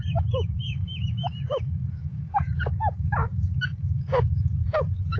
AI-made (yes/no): yes